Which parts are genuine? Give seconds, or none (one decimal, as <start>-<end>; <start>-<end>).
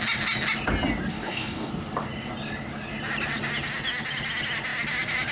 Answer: 0.0-1.1; 1.7-5.3